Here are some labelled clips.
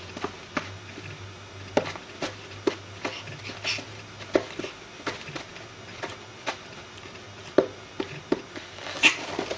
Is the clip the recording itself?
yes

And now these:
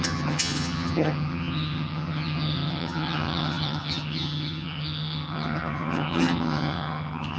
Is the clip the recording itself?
no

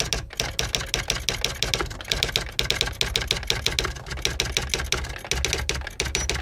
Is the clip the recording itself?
yes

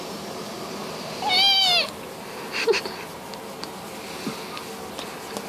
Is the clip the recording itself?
yes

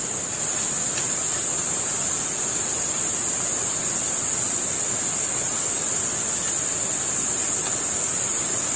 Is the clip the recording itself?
yes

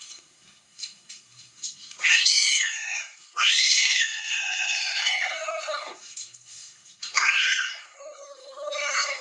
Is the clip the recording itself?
no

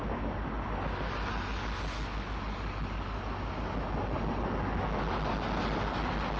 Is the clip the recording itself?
yes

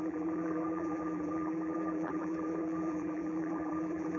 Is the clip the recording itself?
no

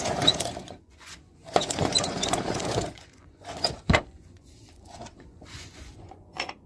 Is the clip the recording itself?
no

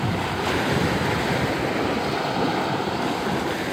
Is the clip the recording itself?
no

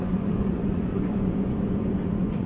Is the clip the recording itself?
no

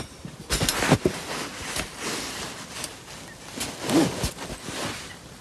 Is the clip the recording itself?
yes